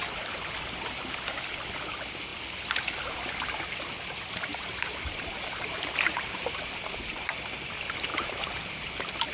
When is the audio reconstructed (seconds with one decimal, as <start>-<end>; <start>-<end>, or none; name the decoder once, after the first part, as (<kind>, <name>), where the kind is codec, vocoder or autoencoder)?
4.5-6.6 (vocoder, BigVGAN v2); 8.1-8.9